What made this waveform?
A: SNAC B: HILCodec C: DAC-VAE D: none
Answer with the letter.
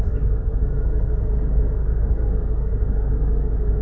A